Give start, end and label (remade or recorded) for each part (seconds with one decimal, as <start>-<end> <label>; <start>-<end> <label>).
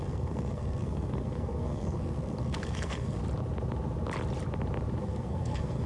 0.0-3.2 remade; 3.2-5.0 recorded; 5.0-5.9 remade